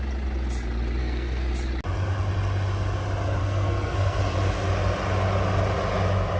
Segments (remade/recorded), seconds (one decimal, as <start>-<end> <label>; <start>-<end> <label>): 0.0-1.0 recorded; 1.0-1.5 remade; 1.5-3.4 recorded; 3.4-4.2 remade; 4.2-6.4 recorded